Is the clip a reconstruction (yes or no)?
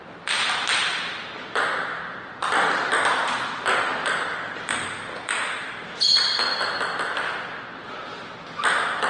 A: no